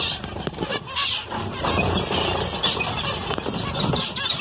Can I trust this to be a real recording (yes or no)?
no